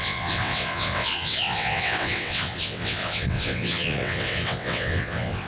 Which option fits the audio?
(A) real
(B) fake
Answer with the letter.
B